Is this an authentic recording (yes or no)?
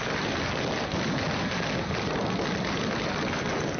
yes